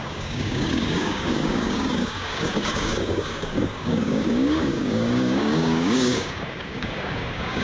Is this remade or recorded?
remade